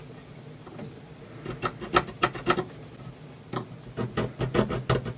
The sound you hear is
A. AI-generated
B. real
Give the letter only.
B